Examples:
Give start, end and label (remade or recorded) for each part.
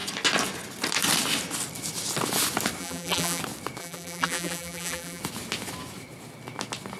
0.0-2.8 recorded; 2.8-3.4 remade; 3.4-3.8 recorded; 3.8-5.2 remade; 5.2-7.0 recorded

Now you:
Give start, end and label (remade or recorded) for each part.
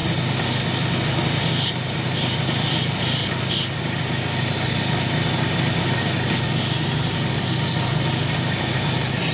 0.0-9.3 recorded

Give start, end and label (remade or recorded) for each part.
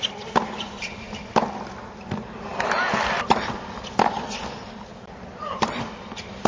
0.0-2.5 recorded; 2.5-4.4 remade; 4.4-4.9 recorded; 4.9-6.5 remade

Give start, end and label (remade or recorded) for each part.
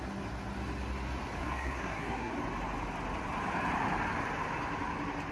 0.0-1.4 recorded; 1.4-2.3 remade; 2.3-5.3 recorded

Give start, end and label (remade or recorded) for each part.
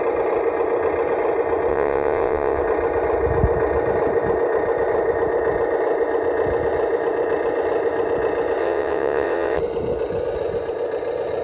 0.0-1.7 recorded; 1.7-2.6 remade; 2.6-8.6 recorded; 8.6-9.6 remade; 9.6-11.4 recorded